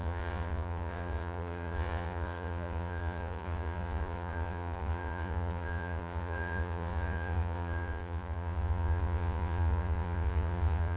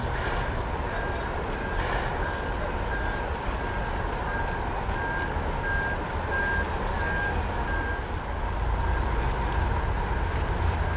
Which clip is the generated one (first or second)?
first